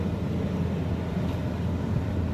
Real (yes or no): yes